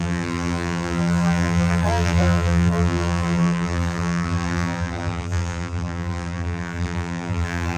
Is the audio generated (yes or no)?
yes